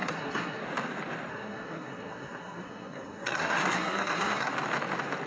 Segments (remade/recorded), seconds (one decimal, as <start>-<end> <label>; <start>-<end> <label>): 0.0-0.6 remade; 0.6-1.3 recorded; 1.3-4.5 remade; 4.5-5.3 recorded